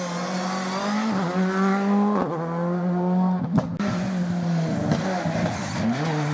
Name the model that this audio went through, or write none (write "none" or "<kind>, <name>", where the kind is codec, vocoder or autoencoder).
none